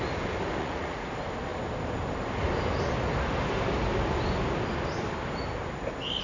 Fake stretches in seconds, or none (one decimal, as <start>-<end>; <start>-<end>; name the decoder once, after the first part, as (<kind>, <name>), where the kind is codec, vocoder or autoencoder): 0.6-1.1 (vocoder, Vocos)